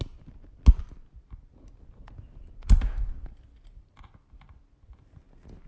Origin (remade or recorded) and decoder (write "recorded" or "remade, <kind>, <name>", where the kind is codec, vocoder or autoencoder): recorded